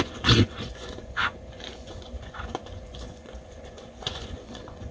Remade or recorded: remade